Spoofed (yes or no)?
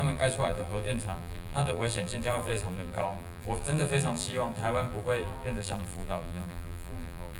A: yes